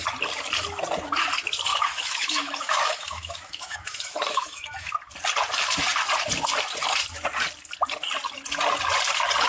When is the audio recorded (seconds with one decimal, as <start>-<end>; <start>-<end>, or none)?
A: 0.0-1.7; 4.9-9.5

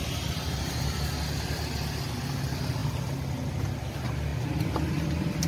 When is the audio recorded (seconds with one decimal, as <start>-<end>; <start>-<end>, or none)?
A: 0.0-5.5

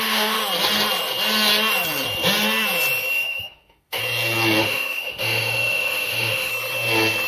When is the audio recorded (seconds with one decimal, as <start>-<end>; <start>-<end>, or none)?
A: 0.4-3.1; 4.0-4.6; 6.5-7.3